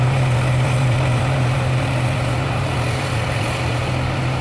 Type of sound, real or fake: fake